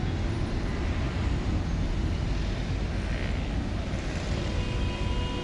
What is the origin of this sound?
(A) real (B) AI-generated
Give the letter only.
A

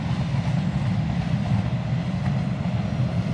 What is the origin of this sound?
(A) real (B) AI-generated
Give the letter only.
A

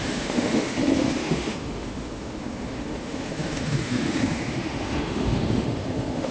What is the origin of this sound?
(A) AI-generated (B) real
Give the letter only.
A